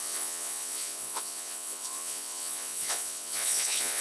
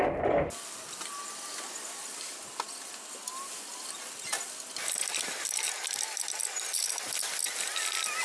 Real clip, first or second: second